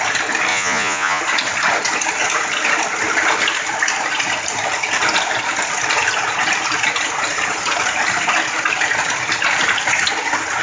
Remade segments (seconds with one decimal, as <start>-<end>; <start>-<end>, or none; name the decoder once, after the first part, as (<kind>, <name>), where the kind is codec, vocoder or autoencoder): 0.5-1.2 (vocoder, Vocos)